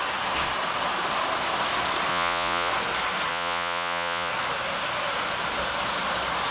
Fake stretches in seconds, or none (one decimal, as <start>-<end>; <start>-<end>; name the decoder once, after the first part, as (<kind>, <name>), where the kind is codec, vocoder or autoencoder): 2.1-2.7 (vocoder, Vocos); 3.3-4.3